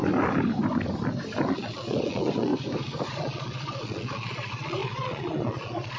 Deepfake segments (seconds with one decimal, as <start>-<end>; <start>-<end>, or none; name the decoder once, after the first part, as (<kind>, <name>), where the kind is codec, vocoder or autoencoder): 1.5-2.5 (vocoder, Vocos); 3.1-6.0